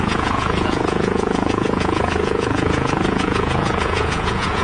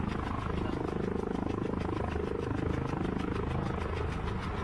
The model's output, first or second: first